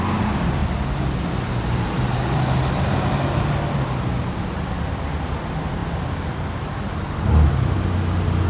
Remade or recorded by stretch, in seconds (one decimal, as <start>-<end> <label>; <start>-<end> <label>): 0.0-8.5 recorded

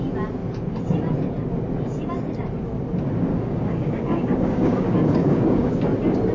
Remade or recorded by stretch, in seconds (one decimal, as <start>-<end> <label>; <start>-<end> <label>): 0.0-3.3 recorded; 3.3-5.7 remade; 5.7-6.3 recorded